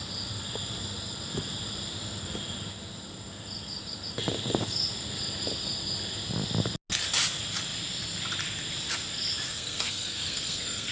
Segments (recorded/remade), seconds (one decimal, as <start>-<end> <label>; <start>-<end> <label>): 0.0-9.5 recorded; 9.5-10.9 remade